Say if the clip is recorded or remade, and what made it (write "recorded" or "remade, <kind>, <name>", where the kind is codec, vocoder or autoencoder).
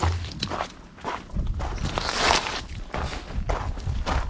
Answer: recorded